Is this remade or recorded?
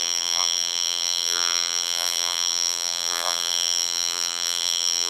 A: remade